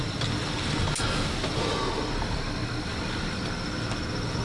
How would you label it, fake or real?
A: real